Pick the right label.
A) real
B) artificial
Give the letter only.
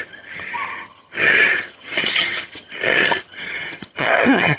B